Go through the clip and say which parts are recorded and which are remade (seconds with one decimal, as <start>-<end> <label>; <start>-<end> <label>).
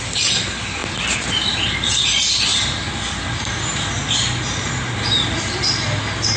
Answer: 0.0-6.4 recorded